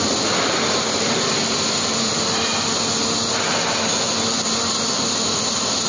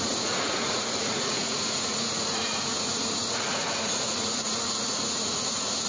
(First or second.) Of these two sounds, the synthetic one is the second